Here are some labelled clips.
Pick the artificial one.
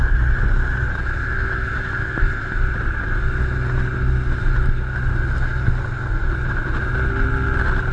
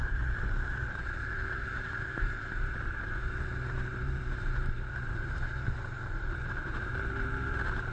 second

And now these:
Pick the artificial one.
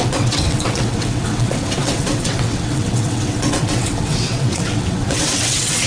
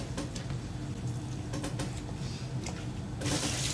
first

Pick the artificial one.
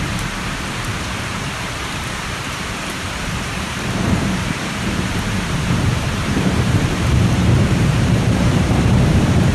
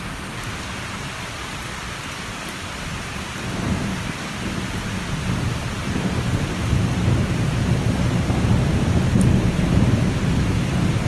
first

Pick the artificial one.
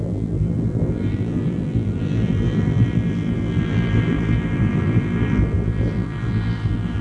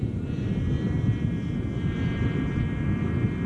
first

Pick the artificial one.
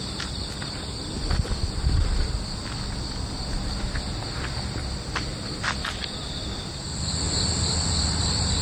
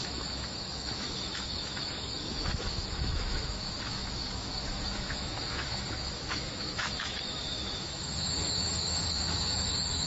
second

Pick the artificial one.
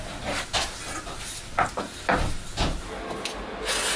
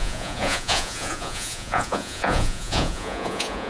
second